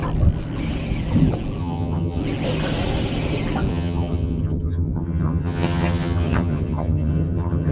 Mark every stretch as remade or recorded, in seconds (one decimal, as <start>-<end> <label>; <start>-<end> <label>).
0.0-1.6 recorded; 1.6-2.2 remade; 2.2-3.7 recorded; 3.7-7.7 remade